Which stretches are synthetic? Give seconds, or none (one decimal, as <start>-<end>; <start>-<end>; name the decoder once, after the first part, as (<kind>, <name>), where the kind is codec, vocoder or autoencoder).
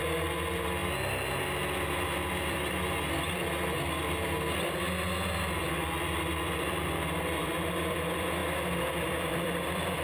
0.0-0.8 (vocoder, BigVGAN v2); 5.5-8.4; 9.0-10.0